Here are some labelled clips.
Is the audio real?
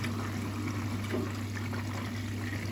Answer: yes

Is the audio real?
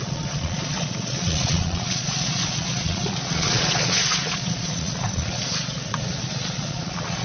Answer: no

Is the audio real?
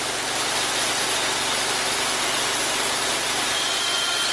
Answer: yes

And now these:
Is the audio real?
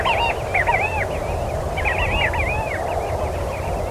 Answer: yes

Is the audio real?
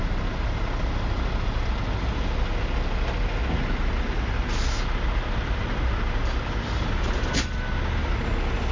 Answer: yes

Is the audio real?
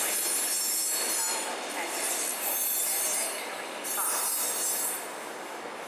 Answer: yes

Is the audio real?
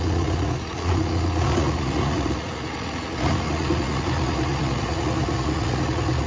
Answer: no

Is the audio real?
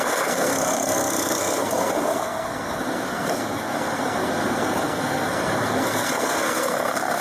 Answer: no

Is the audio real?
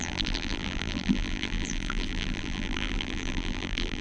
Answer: no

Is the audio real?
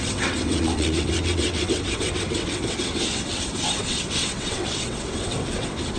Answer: no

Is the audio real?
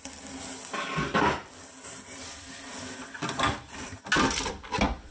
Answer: yes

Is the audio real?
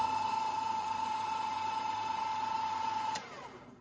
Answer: no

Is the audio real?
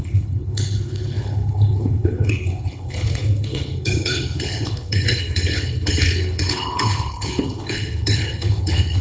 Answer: no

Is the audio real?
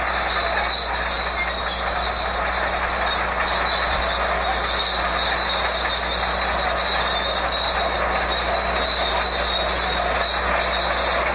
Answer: yes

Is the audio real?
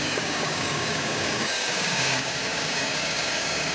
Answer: no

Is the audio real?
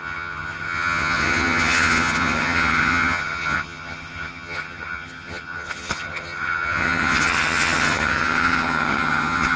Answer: no